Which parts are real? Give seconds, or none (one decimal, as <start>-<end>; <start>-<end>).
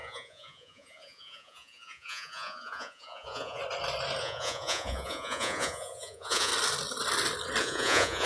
3.6-4.2; 6.5-7.6